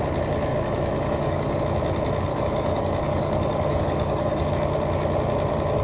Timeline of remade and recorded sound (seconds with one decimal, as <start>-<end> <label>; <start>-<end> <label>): 0.0-0.5 recorded; 0.5-1.6 remade; 1.6-2.3 recorded; 2.3-4.5 remade; 4.5-5.8 recorded